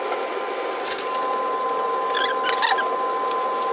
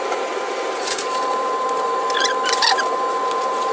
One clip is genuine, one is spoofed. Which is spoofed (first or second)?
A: second